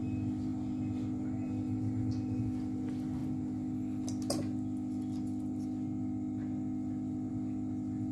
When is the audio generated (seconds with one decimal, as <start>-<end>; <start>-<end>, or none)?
none